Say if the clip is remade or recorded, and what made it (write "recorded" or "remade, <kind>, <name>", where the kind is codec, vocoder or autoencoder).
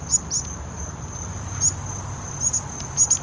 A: recorded